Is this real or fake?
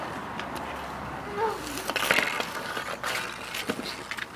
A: real